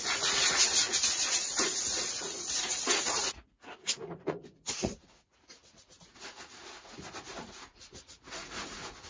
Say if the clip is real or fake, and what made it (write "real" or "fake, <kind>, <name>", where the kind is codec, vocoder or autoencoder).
fake, vocoder, Vocos